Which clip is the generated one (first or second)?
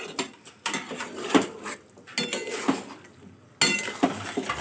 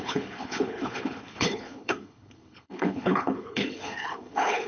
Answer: second